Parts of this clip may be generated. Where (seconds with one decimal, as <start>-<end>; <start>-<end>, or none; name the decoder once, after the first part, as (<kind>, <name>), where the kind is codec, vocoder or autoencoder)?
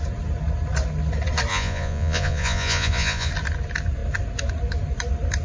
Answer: 1.5-3.3 (vocoder, Vocos)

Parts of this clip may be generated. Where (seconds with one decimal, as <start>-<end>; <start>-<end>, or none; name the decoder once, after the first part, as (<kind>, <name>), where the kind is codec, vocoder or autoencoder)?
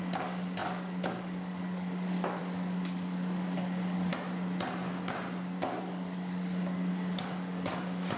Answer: 0.0-4.1 (codec, DAC); 5.8-8.2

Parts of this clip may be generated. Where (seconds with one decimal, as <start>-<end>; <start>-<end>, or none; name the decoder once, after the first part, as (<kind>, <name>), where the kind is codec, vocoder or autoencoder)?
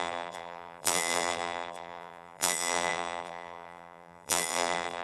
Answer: 0.0-5.0 (vocoder, BigVGAN v2)